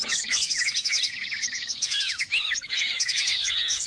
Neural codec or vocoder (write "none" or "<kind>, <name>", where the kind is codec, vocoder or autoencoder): autoencoder, DAC-VAE